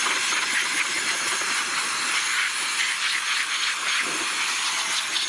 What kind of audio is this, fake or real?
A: real